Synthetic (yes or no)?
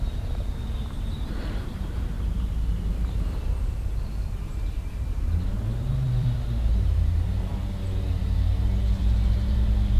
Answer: yes